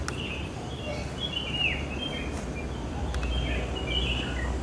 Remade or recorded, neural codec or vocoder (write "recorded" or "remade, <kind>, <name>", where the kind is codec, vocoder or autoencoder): recorded